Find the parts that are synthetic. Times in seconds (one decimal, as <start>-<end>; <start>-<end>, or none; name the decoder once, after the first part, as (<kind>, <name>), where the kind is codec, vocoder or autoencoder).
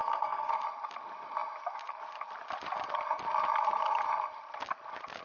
0.0-0.5 (codec, SNAC)